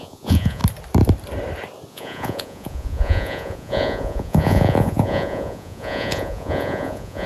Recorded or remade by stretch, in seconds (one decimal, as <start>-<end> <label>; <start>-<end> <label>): 0.0-0.6 remade; 0.6-1.9 recorded; 1.9-7.3 remade